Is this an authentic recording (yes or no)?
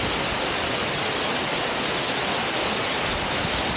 yes